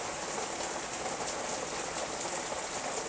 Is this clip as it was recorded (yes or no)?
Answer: yes